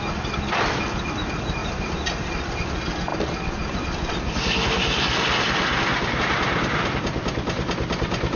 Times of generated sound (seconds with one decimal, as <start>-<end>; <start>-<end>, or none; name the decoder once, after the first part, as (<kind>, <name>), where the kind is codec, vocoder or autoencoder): none